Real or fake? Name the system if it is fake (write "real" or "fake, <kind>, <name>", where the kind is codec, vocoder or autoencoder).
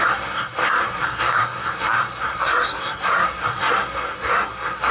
fake, codec, SNAC